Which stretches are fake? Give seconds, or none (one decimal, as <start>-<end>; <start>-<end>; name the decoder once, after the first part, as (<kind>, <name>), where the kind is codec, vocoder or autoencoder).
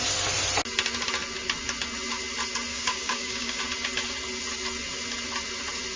2.7-3.6 (codec, DAC)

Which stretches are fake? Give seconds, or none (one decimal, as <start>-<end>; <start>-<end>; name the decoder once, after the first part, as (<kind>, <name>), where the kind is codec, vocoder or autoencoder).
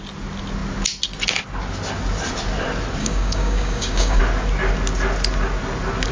3.0-4.2 (codec, DAC)